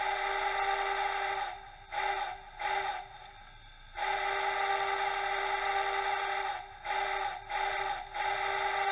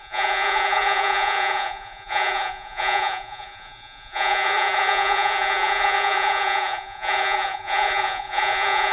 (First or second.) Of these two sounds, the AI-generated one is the second